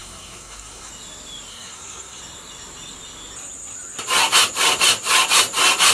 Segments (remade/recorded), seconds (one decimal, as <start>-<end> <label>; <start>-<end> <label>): 0.0-0.9 remade; 0.9-1.5 recorded; 1.5-2.2 remade; 2.2-5.9 recorded